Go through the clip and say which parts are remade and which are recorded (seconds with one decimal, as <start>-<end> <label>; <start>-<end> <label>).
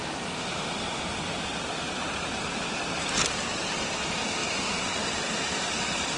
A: 0.0-6.2 recorded